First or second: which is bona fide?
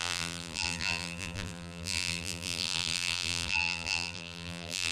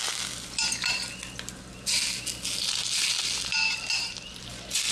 second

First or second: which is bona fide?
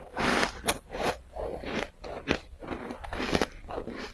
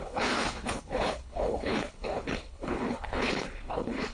first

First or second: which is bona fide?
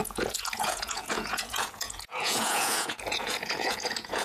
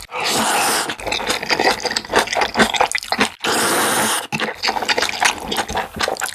second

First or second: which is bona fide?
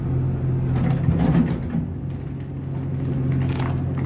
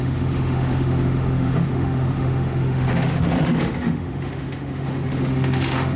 first